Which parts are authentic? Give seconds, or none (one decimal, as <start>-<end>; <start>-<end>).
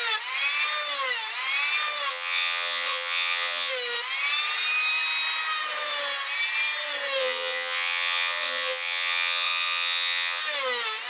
0.0-2.1; 3.7-7.2; 10.4-11.1